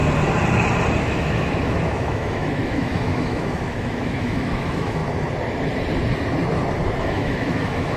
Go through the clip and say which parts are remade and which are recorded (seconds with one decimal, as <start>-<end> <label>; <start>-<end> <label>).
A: 0.0-1.0 recorded; 1.0-5.0 remade; 5.0-7.0 recorded; 7.0-8.0 remade